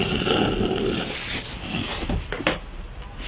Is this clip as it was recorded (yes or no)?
yes